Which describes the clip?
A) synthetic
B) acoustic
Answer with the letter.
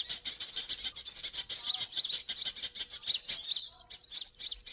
B